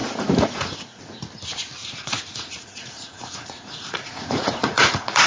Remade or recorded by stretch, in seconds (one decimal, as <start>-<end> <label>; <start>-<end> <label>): 0.0-1.0 remade; 1.0-1.8 recorded; 1.8-5.3 remade